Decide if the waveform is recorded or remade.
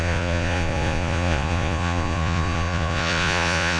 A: remade